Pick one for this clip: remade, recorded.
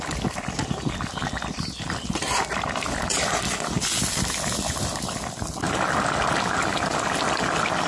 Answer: recorded